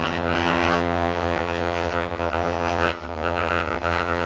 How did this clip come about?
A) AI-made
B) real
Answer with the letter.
A